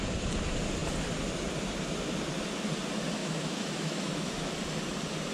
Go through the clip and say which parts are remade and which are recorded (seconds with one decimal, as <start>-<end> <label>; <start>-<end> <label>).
0.0-3.2 recorded; 3.2-4.5 remade; 4.5-5.3 recorded